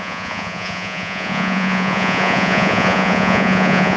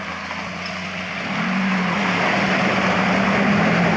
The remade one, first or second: first